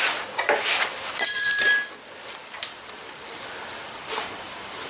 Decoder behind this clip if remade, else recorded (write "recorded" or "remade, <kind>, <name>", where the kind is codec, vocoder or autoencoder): remade, vocoder, BigVGAN v2